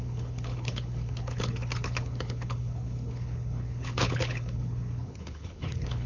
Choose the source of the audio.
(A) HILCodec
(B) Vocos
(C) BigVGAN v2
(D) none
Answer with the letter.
A